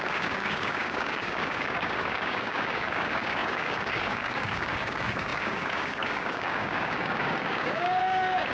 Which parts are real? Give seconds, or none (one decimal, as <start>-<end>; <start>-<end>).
none